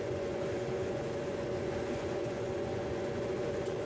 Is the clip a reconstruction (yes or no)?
yes